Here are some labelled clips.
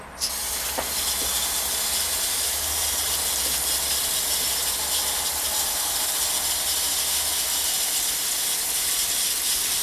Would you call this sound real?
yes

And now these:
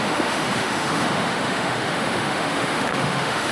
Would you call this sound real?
no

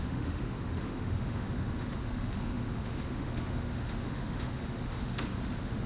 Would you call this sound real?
no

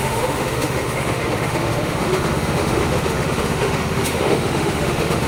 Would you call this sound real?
no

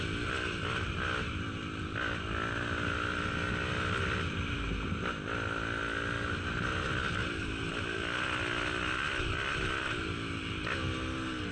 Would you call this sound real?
yes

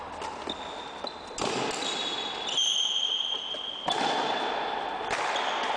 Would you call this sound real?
yes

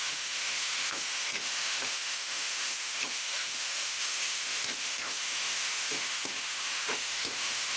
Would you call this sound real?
no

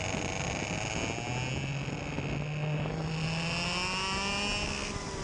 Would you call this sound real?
yes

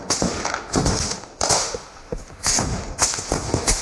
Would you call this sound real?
no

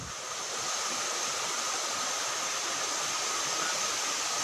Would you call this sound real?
yes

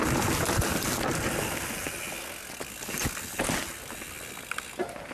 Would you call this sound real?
yes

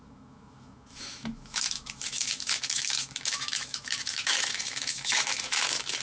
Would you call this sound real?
no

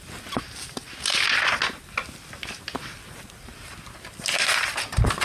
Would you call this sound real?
yes